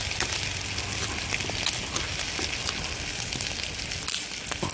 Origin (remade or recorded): recorded